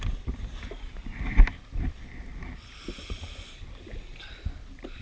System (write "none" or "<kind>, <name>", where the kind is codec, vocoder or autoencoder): none